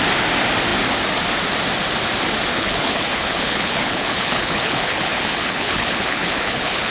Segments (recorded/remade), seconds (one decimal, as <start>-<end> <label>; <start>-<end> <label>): 0.0-2.5 recorded; 2.5-6.9 remade